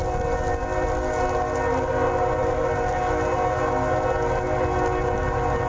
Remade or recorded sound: recorded